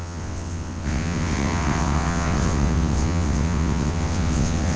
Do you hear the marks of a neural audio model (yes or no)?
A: yes